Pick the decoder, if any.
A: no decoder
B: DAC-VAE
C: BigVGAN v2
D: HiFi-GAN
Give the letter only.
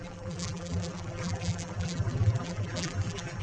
C